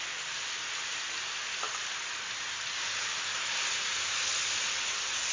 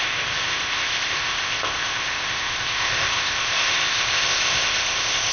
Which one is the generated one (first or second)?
second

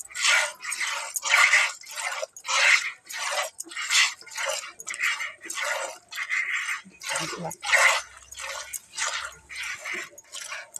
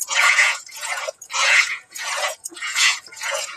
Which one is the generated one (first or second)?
second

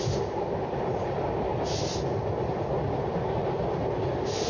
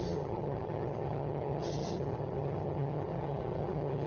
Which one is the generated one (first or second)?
second